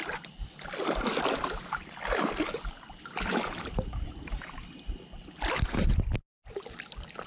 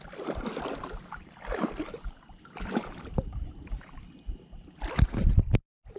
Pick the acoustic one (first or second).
first